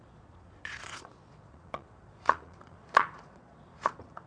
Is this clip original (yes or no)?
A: no